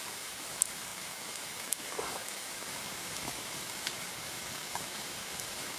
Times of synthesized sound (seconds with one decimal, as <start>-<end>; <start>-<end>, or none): 0.0-5.8